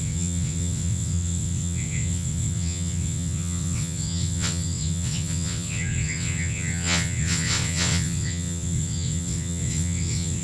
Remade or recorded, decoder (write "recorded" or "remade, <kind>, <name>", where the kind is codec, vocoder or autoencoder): remade, vocoder, WaveNeXt